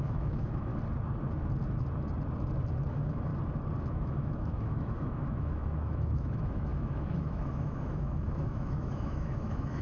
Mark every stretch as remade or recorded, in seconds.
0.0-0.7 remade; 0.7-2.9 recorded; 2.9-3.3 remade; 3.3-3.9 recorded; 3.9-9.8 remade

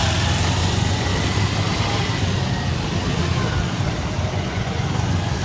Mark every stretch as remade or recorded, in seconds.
0.0-0.6 recorded; 0.6-1.1 remade; 1.1-4.3 recorded; 4.3-5.4 remade

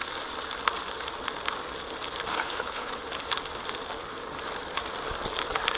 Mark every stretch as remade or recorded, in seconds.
0.0-2.3 recorded; 2.3-3.0 remade; 3.0-5.8 recorded

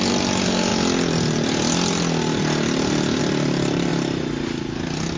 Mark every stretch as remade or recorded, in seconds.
0.0-5.2 recorded

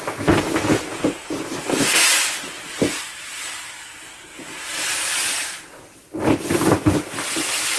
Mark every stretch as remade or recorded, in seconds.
0.0-7.8 recorded

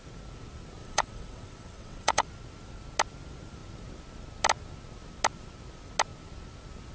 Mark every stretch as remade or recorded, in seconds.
0.0-0.8 recorded; 0.8-2.3 remade; 2.3-6.9 recorded

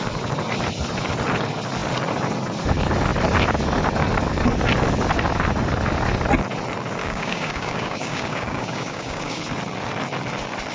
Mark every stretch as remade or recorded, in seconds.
0.0-7.0 recorded; 7.0-9.4 remade; 9.4-10.7 recorded

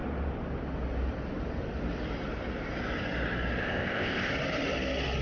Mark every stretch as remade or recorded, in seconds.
0.0-3.6 recorded; 3.6-4.3 remade; 4.3-5.2 recorded